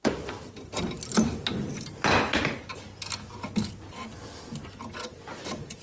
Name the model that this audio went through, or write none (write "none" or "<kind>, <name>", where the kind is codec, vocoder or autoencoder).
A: none